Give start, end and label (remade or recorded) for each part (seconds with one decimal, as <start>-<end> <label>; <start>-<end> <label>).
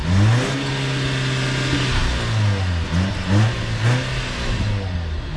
0.0-5.4 recorded